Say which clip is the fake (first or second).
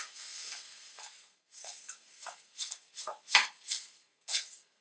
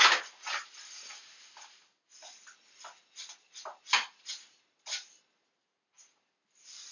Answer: first